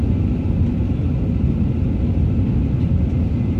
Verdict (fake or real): real